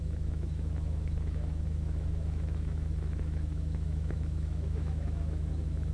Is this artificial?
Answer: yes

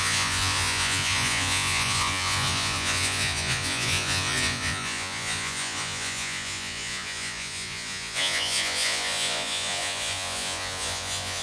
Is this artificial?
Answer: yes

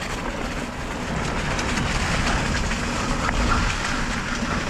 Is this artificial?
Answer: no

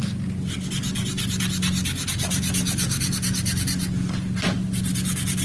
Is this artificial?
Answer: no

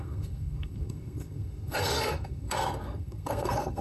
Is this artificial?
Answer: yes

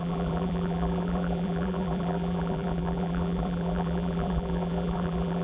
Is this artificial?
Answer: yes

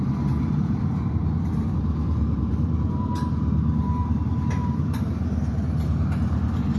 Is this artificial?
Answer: yes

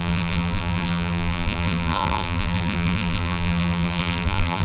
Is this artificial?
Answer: yes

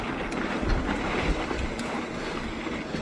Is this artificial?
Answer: no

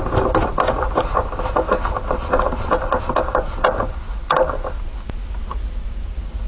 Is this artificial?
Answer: no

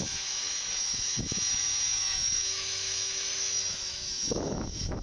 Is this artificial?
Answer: yes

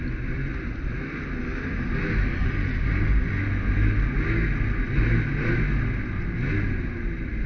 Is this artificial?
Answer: no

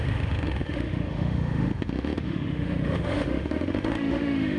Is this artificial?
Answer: yes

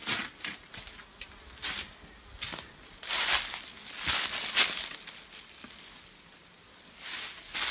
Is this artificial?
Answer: no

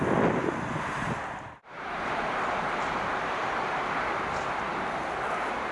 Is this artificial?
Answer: no